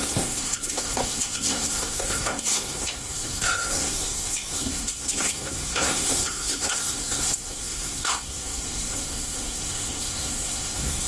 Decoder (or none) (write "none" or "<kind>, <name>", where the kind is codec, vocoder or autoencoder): codec, SNAC